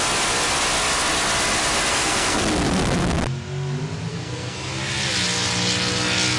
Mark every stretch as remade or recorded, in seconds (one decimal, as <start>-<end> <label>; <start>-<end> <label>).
0.0-1.9 recorded; 1.9-2.4 remade; 2.4-4.1 recorded; 4.1-4.7 remade; 4.7-6.4 recorded